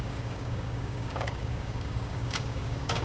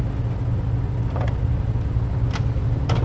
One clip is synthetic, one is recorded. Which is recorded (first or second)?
second